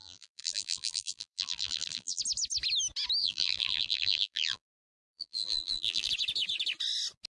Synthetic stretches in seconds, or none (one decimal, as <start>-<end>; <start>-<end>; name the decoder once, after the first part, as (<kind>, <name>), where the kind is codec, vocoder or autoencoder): 0.0-2.2 (vocoder, BigVGAN v2); 3.2-6.1